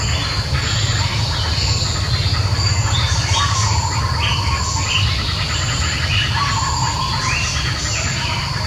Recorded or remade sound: recorded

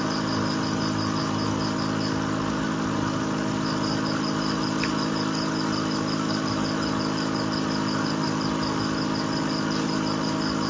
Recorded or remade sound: recorded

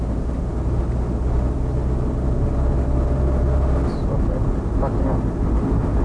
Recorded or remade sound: recorded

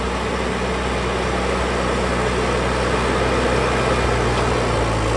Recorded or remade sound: recorded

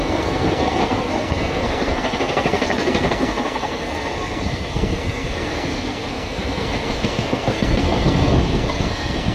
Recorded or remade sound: remade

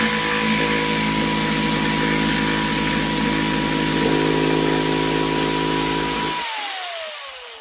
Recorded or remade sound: recorded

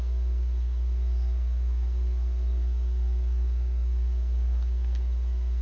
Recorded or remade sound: remade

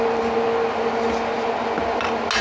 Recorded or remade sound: recorded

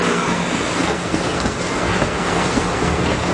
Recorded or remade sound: remade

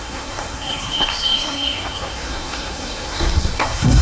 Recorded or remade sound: remade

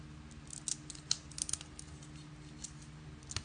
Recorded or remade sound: recorded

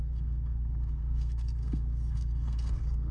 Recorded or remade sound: remade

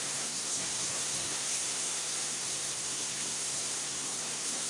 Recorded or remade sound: remade